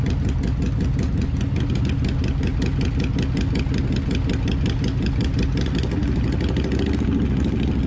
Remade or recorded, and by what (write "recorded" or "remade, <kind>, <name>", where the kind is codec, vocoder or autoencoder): recorded